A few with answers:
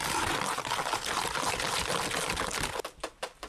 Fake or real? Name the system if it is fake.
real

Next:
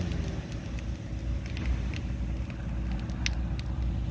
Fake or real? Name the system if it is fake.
real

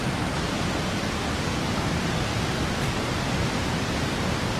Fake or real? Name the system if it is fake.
real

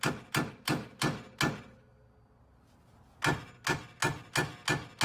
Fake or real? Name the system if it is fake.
real